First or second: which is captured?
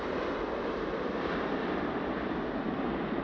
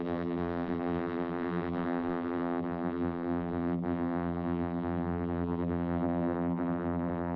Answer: first